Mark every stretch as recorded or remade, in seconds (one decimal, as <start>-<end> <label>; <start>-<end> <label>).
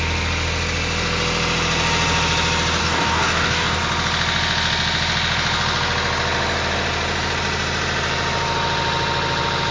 0.0-2.8 recorded; 2.8-3.8 remade; 3.8-9.7 recorded